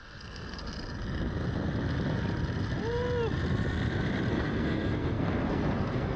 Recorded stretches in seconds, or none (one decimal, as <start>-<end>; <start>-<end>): 0.6-4.3